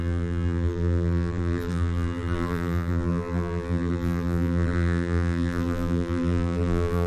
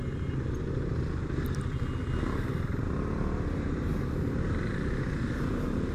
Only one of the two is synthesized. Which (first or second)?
first